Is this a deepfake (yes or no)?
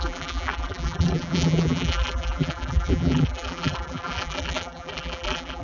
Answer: yes